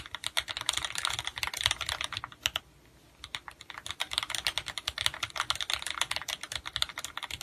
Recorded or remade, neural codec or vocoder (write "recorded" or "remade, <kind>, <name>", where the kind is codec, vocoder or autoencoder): recorded